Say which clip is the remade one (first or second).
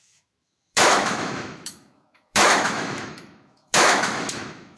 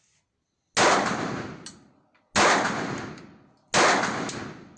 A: first